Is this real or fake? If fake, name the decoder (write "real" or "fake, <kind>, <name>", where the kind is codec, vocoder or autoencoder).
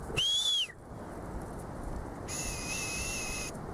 real